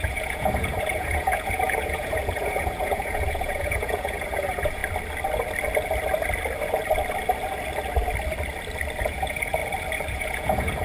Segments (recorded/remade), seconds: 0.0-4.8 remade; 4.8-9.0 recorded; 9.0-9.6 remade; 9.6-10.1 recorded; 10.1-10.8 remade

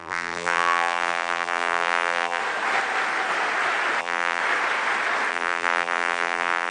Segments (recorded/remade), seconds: 0.0-2.4 remade; 2.4-4.0 recorded; 4.0-4.4 remade; 4.4-5.3 recorded; 5.3-6.7 remade

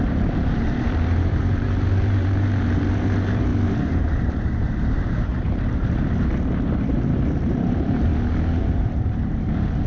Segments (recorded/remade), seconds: 0.0-8.1 remade; 8.1-8.6 recorded; 8.6-9.9 remade

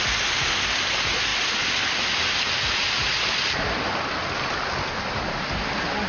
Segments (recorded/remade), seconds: 0.0-6.1 recorded